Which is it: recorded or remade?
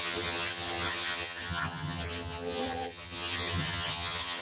remade